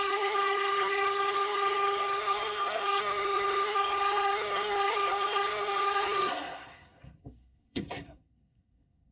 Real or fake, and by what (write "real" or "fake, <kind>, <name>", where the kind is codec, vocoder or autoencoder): fake, codec, SNAC